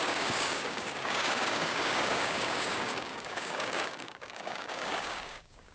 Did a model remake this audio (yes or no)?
yes